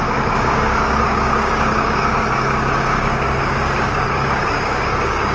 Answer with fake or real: fake